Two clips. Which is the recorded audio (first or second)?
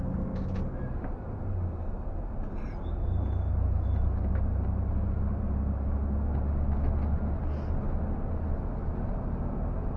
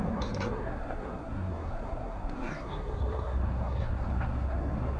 first